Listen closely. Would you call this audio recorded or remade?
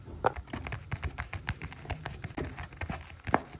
recorded